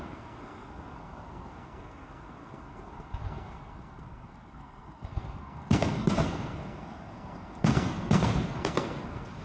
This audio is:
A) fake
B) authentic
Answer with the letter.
A